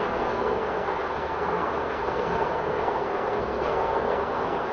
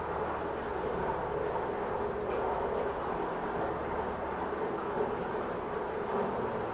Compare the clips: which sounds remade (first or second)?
first